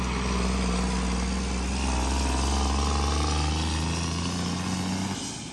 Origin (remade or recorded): recorded